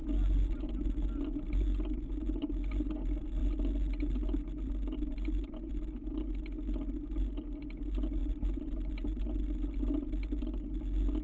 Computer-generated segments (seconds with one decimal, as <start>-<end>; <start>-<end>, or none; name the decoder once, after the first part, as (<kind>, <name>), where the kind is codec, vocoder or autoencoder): none